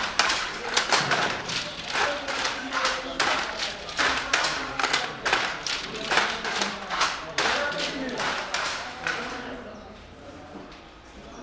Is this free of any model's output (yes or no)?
no